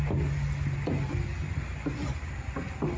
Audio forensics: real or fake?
real